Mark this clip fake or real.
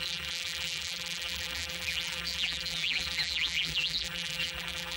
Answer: fake